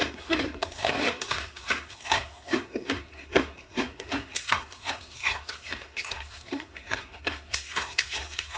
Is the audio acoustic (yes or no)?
no